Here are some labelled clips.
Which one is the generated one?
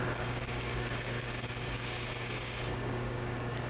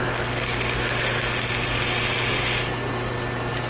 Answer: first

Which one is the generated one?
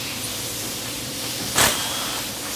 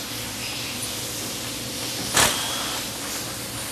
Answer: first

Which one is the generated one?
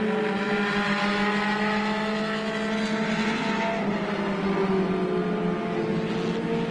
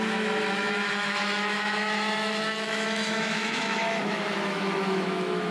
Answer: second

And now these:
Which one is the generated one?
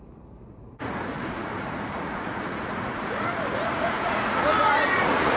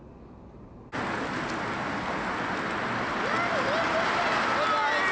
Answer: first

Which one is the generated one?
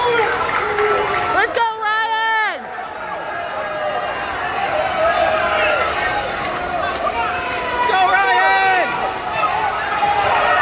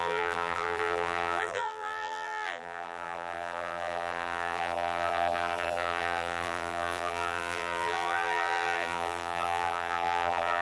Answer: second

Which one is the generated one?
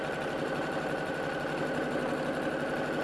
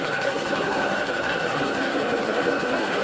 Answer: second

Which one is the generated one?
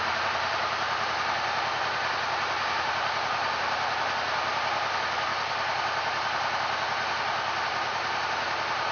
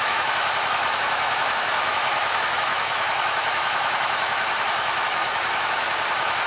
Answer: second